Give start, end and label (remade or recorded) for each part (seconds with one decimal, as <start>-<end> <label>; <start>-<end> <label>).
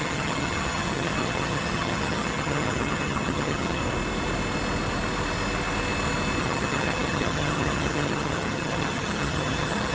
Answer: 0.0-3.8 remade; 3.8-6.4 recorded; 6.4-9.9 remade